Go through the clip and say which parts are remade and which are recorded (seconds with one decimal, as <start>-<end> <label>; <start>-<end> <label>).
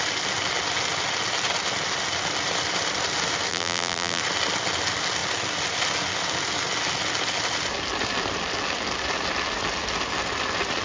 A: 0.0-3.5 recorded; 3.5-4.2 remade; 4.2-10.8 recorded